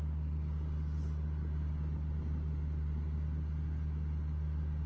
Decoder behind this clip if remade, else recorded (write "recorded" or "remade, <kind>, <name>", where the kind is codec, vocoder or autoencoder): recorded